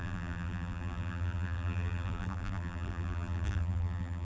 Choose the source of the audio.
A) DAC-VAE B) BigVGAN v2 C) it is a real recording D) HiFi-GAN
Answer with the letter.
B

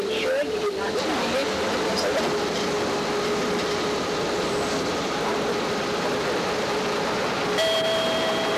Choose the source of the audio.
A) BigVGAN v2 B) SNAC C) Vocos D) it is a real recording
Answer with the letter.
A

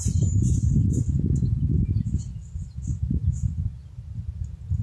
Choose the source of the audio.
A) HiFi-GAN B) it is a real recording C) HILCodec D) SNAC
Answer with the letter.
B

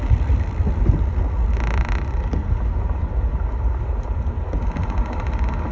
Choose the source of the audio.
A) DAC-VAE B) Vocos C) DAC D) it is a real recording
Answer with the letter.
D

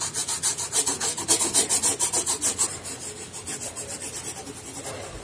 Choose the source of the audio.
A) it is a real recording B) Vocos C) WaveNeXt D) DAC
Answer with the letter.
A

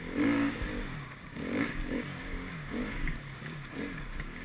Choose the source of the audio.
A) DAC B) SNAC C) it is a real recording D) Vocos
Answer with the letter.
A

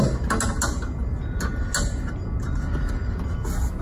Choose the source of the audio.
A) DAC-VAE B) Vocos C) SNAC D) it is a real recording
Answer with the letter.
D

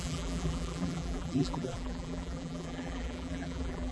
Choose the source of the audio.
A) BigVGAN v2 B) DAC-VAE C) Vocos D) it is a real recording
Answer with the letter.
A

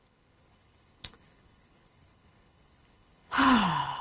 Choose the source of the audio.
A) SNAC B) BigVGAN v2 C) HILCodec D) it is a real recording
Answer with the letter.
C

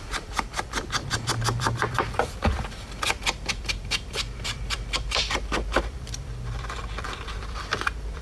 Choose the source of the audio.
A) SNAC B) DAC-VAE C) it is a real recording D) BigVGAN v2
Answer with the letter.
D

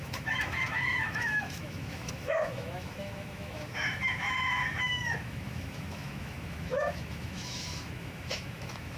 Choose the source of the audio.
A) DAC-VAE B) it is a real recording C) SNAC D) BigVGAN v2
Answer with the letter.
A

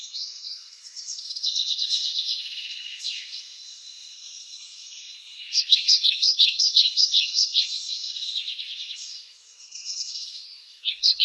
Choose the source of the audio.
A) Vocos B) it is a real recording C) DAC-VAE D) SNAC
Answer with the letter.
D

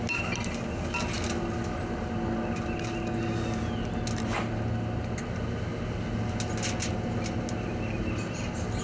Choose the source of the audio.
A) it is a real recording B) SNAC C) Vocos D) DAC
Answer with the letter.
A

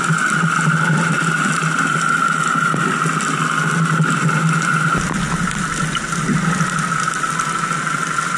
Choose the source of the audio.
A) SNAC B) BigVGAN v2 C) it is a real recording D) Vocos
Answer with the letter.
C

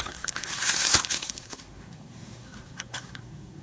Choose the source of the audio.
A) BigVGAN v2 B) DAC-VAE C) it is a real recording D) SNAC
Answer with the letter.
D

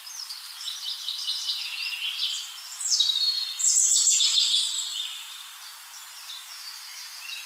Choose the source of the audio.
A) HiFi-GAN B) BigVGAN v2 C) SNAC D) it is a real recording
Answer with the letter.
B